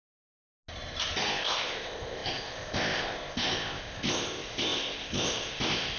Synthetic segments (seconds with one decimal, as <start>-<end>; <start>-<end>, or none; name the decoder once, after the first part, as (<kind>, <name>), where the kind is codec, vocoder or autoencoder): 1.3-6.0 (codec, ZipCodec)